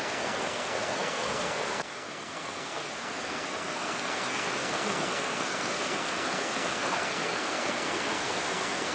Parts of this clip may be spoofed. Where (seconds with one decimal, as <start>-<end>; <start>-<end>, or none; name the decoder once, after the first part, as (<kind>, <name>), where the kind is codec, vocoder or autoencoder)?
0.0-8.9 (codec, SNAC)